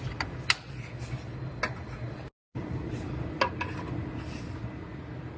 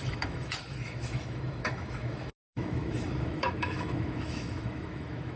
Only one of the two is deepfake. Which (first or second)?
second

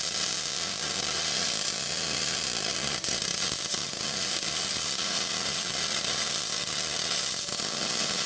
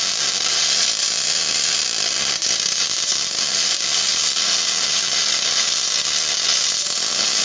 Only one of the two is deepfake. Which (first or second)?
first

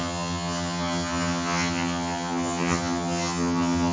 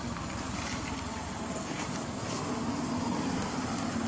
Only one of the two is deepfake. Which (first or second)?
first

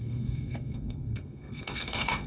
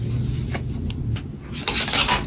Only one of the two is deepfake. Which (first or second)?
first